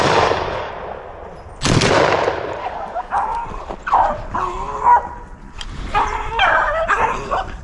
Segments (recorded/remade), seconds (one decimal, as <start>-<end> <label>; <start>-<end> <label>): 0.0-0.7 remade; 0.7-2.6 recorded; 2.6-3.4 remade; 3.4-7.6 recorded